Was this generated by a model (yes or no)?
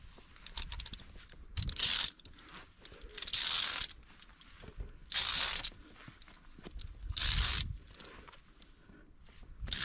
no